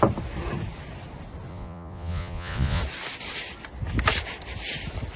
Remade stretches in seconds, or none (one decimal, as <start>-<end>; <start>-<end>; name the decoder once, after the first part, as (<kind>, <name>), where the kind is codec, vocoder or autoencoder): 1.5-2.8 (vocoder, Vocos)